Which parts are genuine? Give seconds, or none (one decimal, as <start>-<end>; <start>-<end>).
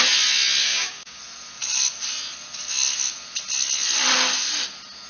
0.0-0.6; 1.2-5.1